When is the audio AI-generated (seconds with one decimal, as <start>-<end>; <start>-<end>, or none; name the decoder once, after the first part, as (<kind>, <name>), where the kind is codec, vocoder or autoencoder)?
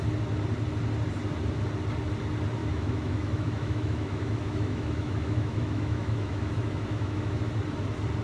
2.6-7.5 (autoencoder, DAC-VAE)